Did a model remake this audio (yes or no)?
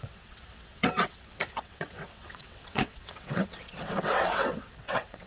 yes